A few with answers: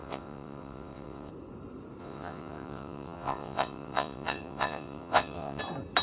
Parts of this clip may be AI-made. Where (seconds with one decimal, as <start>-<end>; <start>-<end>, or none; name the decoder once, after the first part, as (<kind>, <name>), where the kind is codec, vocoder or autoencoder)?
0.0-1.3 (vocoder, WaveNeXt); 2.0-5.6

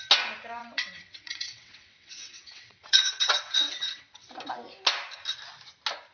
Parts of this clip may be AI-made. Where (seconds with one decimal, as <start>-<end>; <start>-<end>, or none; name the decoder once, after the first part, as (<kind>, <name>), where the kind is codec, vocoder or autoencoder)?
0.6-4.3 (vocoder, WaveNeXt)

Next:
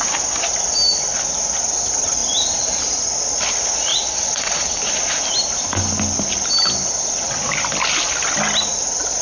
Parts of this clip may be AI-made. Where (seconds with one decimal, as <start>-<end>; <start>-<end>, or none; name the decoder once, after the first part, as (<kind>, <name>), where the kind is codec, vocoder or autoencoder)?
3.9-4.8 (vocoder, WaveNeXt)

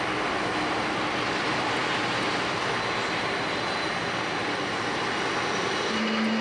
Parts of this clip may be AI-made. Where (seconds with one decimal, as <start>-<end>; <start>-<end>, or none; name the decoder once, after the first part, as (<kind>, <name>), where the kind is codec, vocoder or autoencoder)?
none

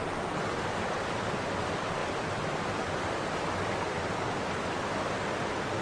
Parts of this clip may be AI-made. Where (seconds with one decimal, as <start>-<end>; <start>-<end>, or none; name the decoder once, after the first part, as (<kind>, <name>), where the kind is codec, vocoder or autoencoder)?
none

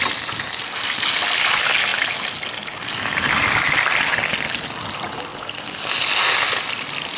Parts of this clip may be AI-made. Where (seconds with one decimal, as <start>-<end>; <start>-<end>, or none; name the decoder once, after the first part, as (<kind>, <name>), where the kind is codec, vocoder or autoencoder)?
none

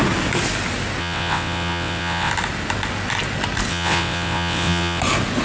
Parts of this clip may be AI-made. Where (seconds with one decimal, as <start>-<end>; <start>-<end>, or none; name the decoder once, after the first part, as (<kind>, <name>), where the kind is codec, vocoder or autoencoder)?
1.0-2.3 (vocoder, WaveNeXt); 3.7-5.0